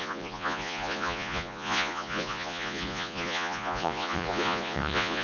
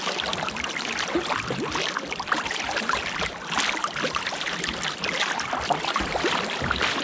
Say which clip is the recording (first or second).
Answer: second